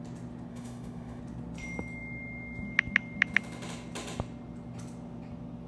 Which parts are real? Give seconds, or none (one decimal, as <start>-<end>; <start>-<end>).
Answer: 0.0-0.5; 1.2-5.7

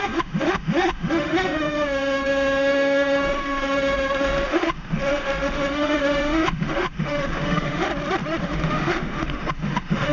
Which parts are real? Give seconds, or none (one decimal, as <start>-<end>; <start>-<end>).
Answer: 7.9-8.4

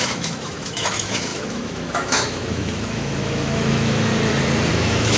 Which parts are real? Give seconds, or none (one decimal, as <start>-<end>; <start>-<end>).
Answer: 4.1-4.7

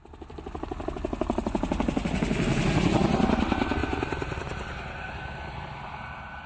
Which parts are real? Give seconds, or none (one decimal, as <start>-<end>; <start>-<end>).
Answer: 0.0-6.5

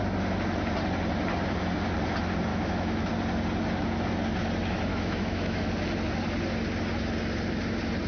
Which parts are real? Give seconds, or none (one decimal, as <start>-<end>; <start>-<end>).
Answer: 0.0-2.5; 3.1-4.9; 5.7-8.1

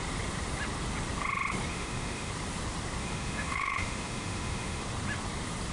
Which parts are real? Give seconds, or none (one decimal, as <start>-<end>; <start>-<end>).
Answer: 0.0-1.7; 2.3-3.0; 4.8-5.7